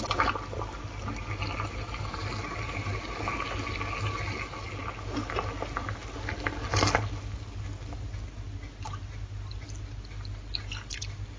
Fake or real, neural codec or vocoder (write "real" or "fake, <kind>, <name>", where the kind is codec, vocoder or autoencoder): real